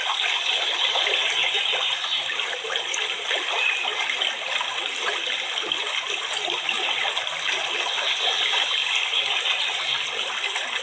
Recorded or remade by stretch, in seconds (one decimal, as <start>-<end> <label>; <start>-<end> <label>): 0.0-10.8 recorded